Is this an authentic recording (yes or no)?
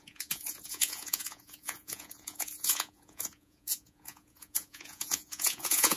no